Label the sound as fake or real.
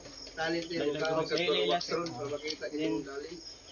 real